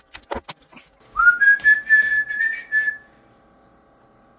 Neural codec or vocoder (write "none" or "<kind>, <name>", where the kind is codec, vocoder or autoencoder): none